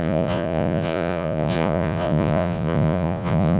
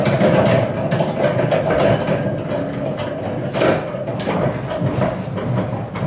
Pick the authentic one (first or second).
second